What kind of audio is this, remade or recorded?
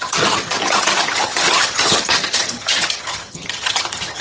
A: remade